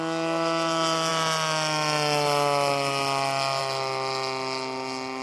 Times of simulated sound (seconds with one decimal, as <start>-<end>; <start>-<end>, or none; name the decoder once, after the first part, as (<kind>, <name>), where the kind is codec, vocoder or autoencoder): none